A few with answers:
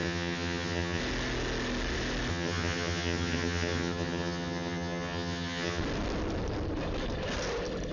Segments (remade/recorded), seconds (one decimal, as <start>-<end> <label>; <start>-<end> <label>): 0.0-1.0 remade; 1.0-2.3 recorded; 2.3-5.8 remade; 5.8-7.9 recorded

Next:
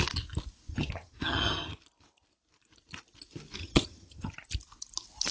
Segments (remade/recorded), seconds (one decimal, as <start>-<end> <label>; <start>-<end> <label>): 0.0-0.7 recorded; 0.7-1.8 remade; 1.8-3.6 recorded; 3.6-4.3 remade; 4.3-5.3 recorded

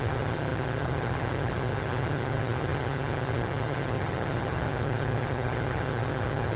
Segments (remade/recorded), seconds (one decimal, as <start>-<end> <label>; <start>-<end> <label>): 0.0-6.6 remade